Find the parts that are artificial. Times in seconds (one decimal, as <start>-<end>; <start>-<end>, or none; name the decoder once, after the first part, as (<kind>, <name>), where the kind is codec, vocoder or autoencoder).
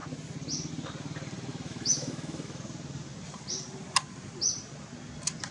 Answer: 1.5-2.6 (autoencoder, DAC-VAE)